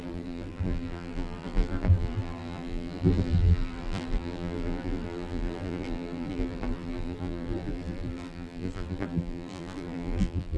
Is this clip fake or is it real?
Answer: fake